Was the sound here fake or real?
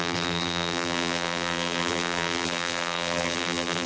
fake